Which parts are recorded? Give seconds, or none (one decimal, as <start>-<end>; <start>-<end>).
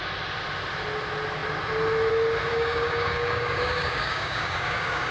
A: 0.0-2.5